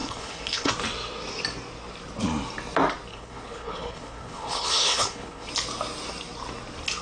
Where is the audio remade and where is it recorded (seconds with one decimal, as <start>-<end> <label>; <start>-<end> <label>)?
0.0-0.7 remade; 0.7-3.1 recorded; 3.1-5.5 remade; 5.5-7.0 recorded